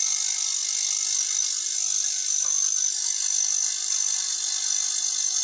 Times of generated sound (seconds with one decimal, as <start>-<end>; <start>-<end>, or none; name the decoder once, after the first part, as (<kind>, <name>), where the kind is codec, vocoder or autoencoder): none